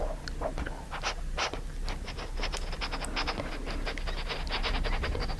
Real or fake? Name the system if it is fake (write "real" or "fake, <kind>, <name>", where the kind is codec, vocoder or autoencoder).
real